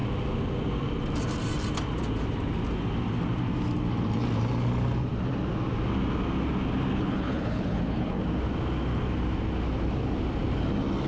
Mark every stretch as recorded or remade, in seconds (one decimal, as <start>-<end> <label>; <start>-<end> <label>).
0.0-6.9 recorded; 6.9-8.2 remade; 8.2-11.1 recorded